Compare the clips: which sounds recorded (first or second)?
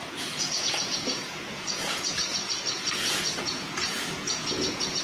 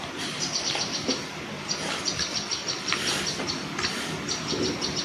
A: second